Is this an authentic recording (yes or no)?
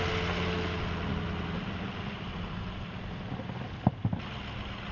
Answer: yes